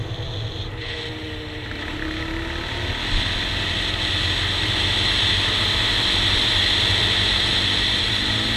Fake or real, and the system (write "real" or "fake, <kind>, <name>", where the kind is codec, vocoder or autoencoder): real